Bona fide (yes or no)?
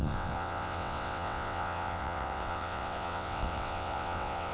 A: no